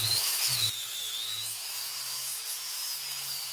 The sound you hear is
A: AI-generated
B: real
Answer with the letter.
A